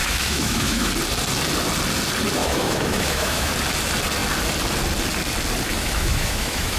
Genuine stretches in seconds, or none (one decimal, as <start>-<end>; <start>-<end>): 0.9-2.4; 3.5-5.7